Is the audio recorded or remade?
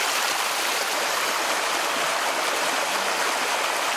recorded